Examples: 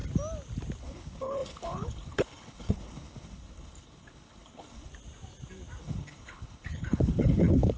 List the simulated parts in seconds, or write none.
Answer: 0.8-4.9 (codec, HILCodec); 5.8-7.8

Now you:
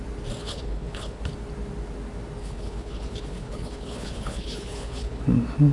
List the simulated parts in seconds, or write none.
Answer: 0.4-1.2 (codec, HILCodec); 2.4-5.2